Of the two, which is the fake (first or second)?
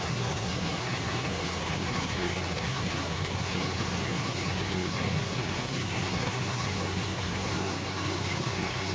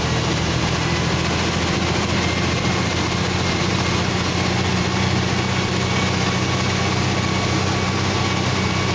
first